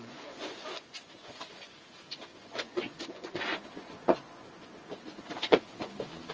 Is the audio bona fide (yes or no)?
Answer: no